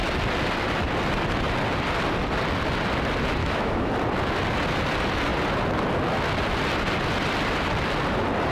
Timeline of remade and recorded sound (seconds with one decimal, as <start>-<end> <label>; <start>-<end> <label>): 0.0-3.4 recorded; 3.4-3.9 remade; 3.9-8.5 recorded